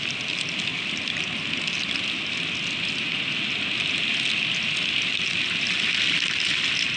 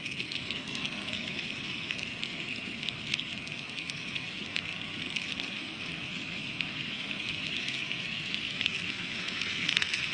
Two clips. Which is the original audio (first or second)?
first